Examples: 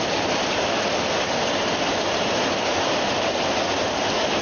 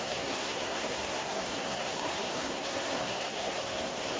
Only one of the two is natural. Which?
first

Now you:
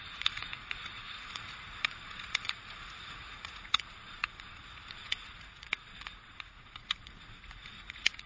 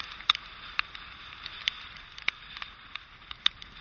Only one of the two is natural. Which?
second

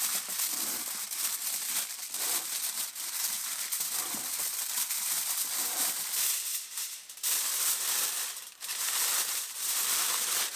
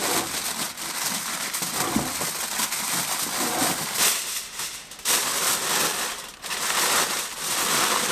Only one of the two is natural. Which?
second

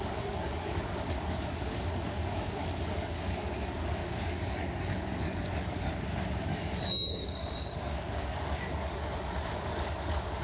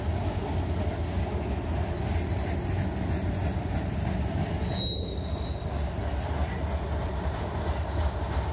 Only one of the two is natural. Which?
second